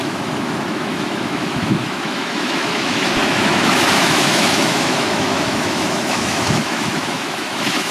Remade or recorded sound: remade